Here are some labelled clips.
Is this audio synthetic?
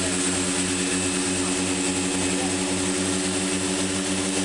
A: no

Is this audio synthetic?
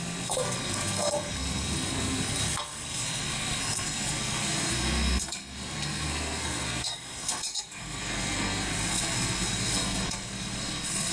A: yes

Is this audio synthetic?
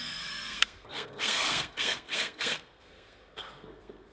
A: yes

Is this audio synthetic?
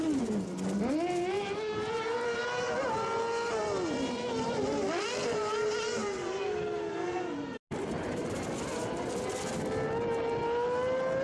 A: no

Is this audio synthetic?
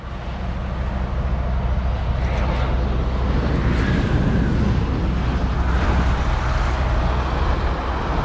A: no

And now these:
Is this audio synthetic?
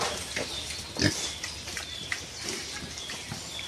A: no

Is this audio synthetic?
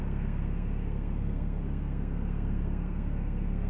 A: yes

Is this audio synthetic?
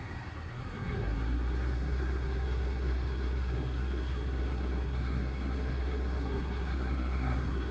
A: yes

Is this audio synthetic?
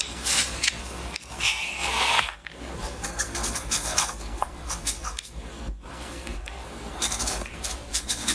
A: yes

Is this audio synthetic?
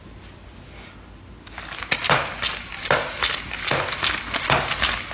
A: no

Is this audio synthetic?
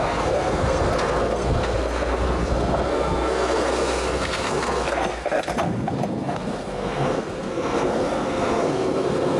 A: yes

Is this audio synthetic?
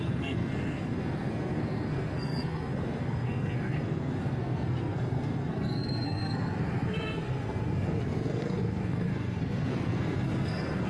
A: yes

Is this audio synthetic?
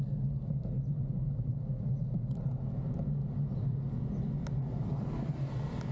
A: no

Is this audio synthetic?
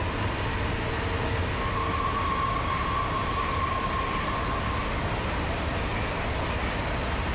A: no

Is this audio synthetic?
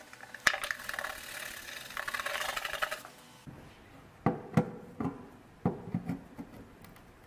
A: no